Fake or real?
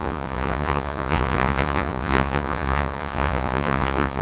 fake